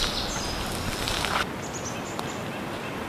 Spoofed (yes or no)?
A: no